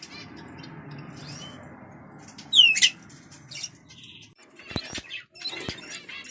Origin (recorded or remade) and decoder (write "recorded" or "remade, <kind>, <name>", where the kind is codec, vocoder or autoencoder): recorded